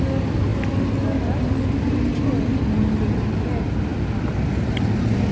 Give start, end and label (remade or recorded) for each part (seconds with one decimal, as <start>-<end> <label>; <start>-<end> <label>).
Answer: 0.0-5.3 recorded